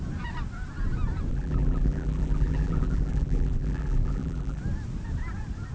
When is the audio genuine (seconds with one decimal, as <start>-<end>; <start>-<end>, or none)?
0.0-1.3; 4.6-5.7